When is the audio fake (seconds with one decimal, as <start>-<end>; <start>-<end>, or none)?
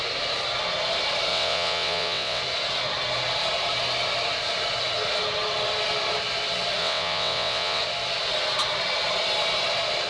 1.3-2.4; 6.8-7.8